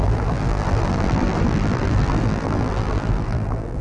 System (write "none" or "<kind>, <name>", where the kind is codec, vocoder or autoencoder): vocoder, BigVGAN v2